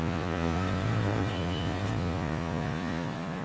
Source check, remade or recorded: remade